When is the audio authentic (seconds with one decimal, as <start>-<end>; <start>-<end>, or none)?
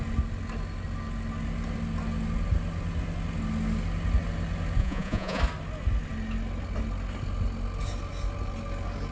0.0-4.8; 5.4-9.1